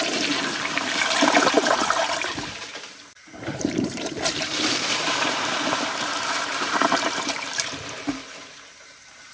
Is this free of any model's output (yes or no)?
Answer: no